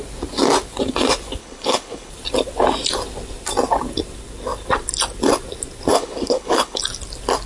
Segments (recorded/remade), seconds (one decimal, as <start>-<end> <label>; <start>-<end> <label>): 0.0-1.4 recorded; 1.4-2.1 remade; 2.1-5.9 recorded; 5.9-6.8 remade; 6.8-7.5 recorded